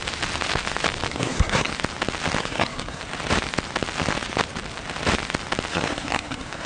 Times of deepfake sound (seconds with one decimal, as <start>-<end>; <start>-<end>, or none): 1.1-1.7; 2.4-3.0; 5.7-6.7